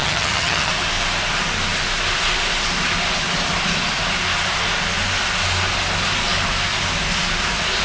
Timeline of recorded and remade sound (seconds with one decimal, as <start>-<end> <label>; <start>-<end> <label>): 0.0-0.7 remade; 0.7-7.8 recorded